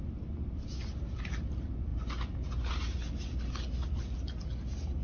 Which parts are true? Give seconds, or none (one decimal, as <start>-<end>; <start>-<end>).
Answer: 0.0-5.0